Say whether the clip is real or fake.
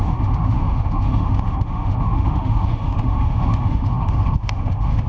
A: fake